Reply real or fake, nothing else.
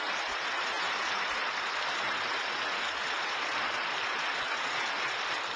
real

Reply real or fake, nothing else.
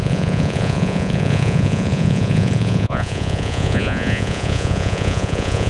fake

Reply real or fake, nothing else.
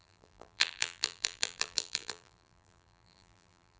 fake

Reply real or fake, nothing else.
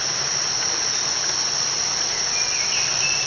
real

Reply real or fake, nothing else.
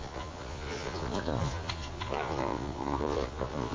fake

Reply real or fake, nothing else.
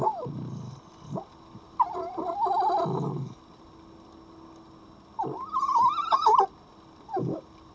real